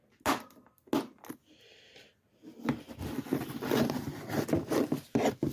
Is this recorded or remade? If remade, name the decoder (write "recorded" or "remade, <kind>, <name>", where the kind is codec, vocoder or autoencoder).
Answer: recorded